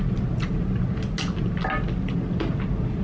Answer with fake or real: real